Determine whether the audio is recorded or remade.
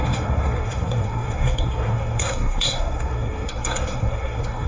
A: remade